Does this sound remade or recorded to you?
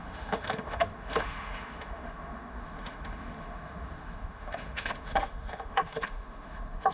remade